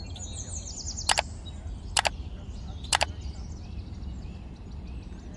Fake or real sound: real